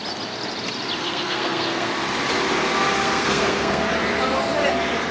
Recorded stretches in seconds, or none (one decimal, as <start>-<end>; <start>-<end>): 0.0-1.0; 1.9-3.0; 3.8-5.1